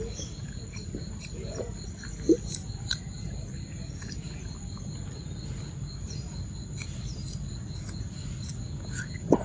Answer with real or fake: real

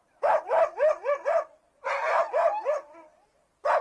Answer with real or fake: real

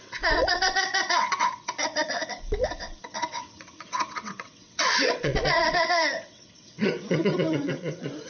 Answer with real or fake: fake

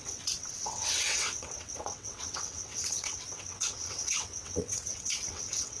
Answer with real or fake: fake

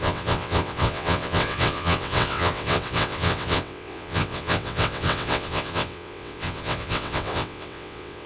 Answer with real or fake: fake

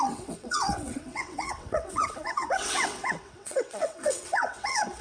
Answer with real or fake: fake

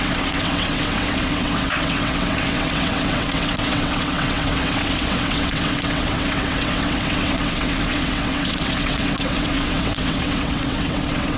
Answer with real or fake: fake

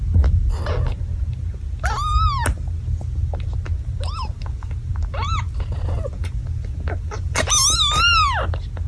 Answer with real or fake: real